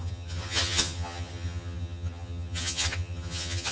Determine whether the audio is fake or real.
fake